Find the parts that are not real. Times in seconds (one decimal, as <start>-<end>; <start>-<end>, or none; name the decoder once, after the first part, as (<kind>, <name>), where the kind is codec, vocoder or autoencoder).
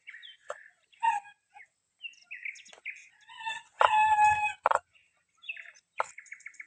0.4-1.8 (vocoder, BigVGAN v2); 5.0-6.7